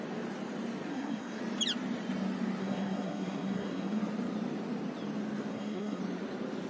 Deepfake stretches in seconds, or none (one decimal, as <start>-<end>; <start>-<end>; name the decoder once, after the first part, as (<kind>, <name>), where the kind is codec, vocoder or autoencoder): 0.9-1.4 (codec, SNAC); 2.6-4.0; 5.5-6.0